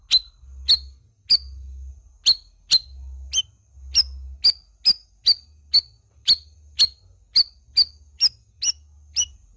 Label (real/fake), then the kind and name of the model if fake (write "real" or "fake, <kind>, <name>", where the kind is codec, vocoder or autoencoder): real